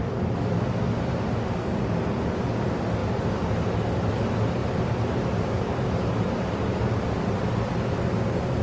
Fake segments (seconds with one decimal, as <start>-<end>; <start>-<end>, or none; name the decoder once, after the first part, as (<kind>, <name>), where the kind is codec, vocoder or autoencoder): 3.0-3.8 (vocoder, BigVGAN v2); 4.6-6.1

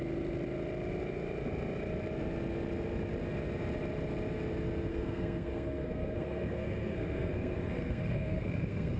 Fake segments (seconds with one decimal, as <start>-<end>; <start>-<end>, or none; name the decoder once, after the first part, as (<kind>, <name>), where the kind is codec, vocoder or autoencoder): 4.9-9.0 (codec, SNAC)